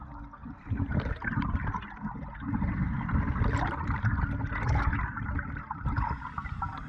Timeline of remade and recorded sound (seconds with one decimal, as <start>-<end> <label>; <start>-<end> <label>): 0.0-6.9 recorded